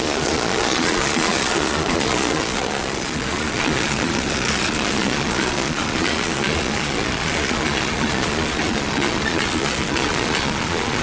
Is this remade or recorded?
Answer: remade